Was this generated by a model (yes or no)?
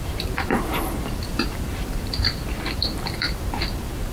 yes